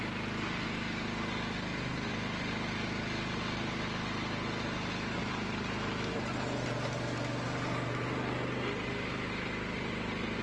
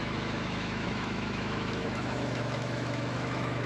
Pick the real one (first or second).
first